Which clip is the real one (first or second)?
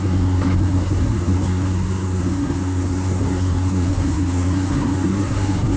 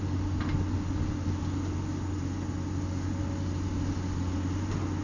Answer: second